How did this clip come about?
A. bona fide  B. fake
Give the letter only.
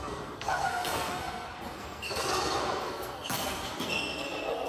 B